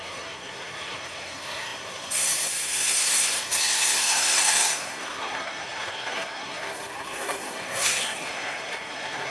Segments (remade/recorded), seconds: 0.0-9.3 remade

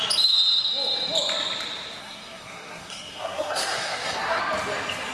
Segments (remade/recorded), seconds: 0.0-2.0 recorded; 2.0-4.4 remade; 4.4-5.1 recorded

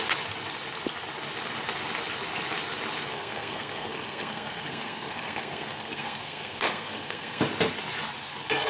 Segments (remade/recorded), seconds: 0.0-3.1 recorded; 3.1-7.4 remade; 7.4-8.7 recorded

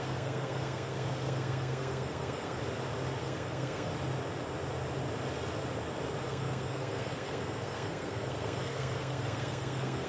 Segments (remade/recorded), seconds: 0.0-2.6 remade; 2.6-3.2 recorded; 3.2-3.9 remade; 3.9-6.3 recorded; 6.3-10.1 remade

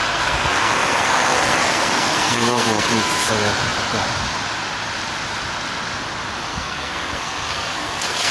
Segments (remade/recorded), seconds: 0.0-3.3 remade; 3.3-6.5 recorded; 6.5-8.3 remade